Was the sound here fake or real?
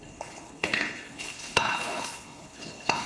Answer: fake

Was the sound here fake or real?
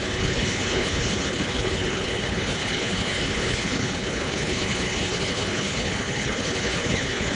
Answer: fake